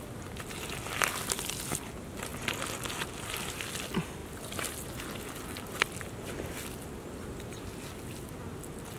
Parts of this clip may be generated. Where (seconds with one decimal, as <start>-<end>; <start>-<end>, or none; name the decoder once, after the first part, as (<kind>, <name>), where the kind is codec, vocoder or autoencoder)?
none